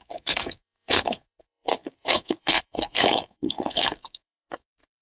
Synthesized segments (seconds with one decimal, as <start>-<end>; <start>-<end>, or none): 0.0-5.0